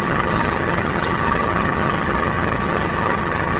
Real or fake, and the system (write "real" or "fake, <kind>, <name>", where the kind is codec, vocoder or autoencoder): fake, vocoder, HiFi-GAN